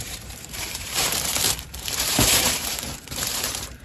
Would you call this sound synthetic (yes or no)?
yes